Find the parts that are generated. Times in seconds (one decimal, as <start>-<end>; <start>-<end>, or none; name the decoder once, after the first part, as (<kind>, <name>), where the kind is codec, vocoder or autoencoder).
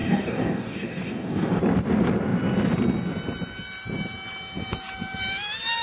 0.0-1.6 (codec, DAC)